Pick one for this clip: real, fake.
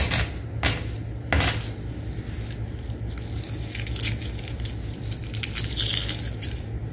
real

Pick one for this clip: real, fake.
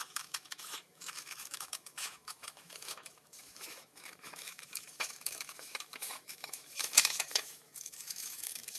fake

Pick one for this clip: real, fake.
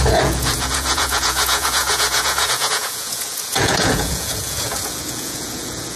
fake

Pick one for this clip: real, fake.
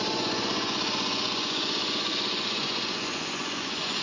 fake